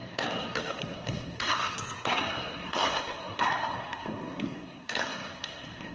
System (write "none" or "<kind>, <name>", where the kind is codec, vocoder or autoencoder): codec, SNAC